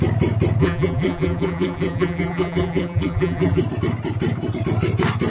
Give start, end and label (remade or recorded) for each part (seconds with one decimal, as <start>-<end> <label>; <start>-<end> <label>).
0.0-0.6 recorded; 0.6-3.6 remade; 3.6-5.3 recorded